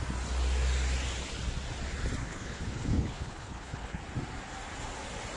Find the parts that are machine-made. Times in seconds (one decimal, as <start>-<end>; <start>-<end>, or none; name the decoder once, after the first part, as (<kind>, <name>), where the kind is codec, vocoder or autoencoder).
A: 2.2-4.0 (codec, HILCodec)